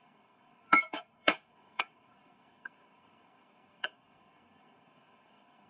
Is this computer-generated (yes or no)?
yes